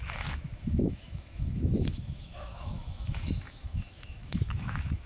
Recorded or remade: remade